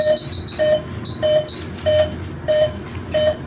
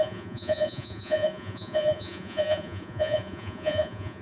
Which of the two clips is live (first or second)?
first